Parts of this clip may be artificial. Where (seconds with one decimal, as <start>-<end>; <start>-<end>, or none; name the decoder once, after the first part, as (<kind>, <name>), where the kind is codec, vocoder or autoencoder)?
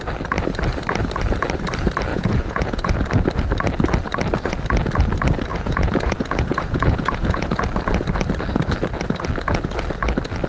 2.1-3.1 (vocoder, Vocos); 5.5-7.6